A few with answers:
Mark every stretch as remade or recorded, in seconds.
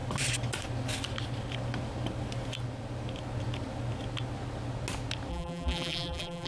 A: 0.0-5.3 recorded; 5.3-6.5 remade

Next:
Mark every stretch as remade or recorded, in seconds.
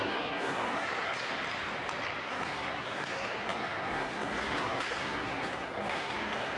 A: 0.0-1.3 remade; 1.3-2.2 recorded; 2.2-6.6 remade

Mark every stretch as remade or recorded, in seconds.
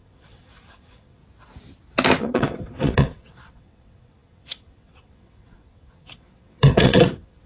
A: 0.0-1.2 remade; 1.2-2.2 recorded; 2.2-7.5 remade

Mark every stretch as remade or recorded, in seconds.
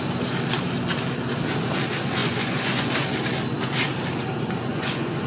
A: 0.0-2.2 recorded; 2.2-2.9 remade; 2.9-4.7 recorded; 4.7-5.3 remade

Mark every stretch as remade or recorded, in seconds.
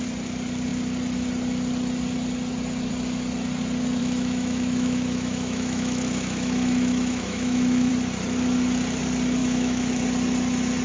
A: 0.0-4.0 recorded; 4.0-7.9 remade; 7.9-9.4 recorded; 9.4-10.0 remade; 10.0-10.8 recorded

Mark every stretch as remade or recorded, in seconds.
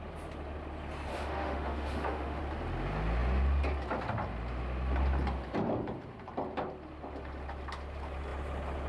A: 0.0-1.1 recorded; 1.1-2.4 remade; 2.4-8.9 recorded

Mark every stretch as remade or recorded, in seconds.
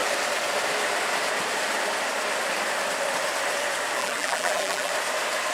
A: 0.0-4.0 recorded; 4.0-4.9 remade; 4.9-5.5 recorded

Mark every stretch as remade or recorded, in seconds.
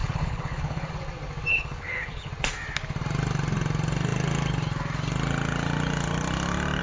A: 0.0-0.9 remade; 0.9-1.5 recorded; 1.5-2.3 remade; 2.3-6.8 recorded